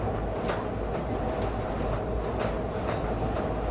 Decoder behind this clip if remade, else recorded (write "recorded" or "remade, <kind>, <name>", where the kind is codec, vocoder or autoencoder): recorded